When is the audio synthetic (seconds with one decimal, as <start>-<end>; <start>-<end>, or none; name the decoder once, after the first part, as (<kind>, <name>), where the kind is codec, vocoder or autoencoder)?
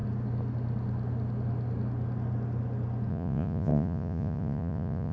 3.1-5.1 (vocoder, Vocos)